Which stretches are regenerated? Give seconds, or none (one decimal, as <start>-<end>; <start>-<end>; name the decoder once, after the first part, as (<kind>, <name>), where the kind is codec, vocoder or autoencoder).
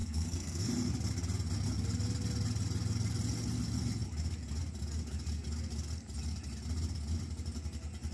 0.0-0.7 (codec, SNAC)